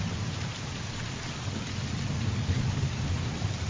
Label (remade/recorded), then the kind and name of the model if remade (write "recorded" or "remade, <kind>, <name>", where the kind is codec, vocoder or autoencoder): recorded